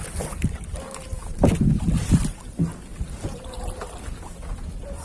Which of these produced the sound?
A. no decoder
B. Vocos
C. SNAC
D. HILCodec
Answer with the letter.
A